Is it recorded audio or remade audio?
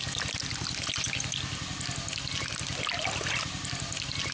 recorded